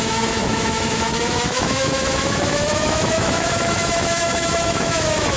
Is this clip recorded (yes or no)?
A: no